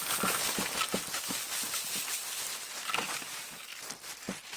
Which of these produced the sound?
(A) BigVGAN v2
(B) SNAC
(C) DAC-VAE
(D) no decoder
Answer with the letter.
D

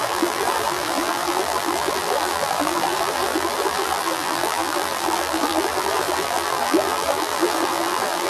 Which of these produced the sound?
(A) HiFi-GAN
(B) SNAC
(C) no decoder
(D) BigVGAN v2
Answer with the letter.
D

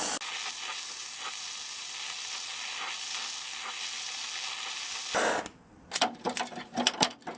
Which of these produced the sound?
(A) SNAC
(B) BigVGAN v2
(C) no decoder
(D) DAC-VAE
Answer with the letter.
C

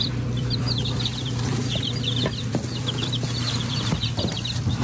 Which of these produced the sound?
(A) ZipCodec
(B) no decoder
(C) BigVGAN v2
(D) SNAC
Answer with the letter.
C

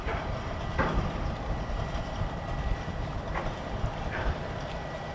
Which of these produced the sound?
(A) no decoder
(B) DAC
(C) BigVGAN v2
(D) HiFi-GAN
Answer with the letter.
C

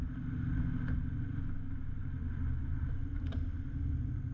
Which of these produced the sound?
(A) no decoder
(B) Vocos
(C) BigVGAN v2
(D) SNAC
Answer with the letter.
A